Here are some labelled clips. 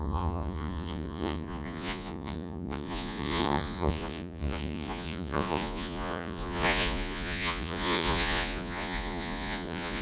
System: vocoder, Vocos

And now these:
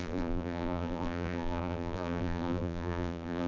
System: vocoder, BigVGAN v2